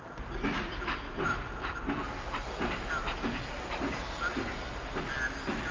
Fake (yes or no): no